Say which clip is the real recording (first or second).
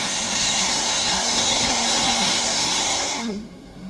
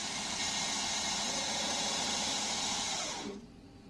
second